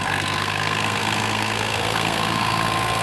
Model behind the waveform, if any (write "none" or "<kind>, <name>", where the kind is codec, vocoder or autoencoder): codec, SNAC